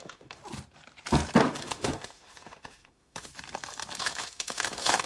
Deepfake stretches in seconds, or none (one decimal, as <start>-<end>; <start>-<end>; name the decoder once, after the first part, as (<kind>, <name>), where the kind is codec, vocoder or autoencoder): 0.0-0.4 (autoencoder, DAC-VAE); 1.6-3.3; 4.0-5.1